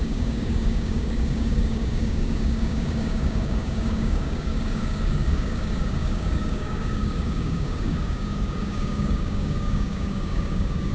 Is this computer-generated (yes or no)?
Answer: yes